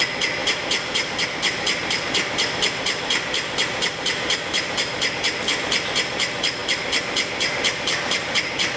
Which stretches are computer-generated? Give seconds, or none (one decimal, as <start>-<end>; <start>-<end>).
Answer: 0.4-5.1